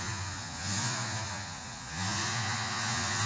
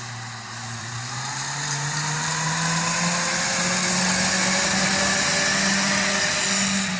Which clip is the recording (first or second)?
second